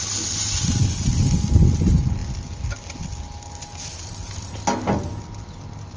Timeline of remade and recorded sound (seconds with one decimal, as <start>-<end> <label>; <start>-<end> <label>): 0.0-6.0 recorded